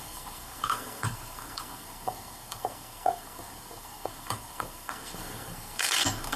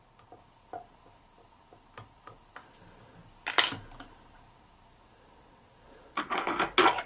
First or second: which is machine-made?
first